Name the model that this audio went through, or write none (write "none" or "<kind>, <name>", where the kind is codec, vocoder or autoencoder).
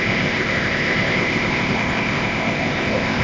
codec, ZipCodec